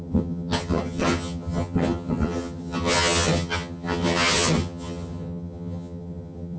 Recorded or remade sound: remade